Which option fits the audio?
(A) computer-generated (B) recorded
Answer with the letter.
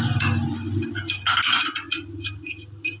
B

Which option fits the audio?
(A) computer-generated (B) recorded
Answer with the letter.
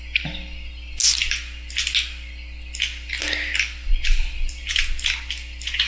B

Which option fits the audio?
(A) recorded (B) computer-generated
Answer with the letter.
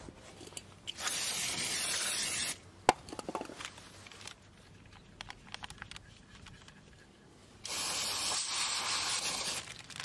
A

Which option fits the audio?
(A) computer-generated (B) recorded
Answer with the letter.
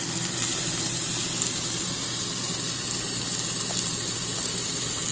B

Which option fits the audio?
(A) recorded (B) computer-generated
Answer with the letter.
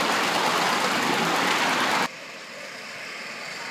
A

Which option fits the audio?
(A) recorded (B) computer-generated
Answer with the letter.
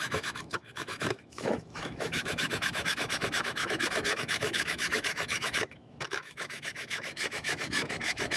B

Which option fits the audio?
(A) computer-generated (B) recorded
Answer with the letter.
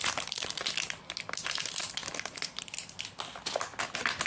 B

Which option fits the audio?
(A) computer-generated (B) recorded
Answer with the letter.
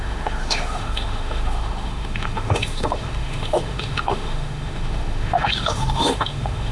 A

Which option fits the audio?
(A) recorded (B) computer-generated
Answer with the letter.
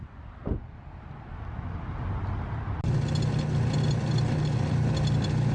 A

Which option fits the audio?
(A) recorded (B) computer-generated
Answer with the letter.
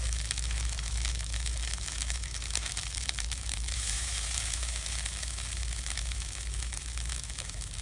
B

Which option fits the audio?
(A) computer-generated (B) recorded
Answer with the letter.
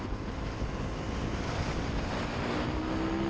B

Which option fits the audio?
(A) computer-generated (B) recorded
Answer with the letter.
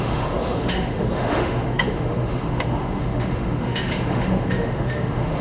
A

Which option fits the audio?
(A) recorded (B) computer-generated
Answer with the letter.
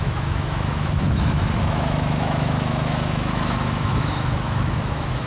B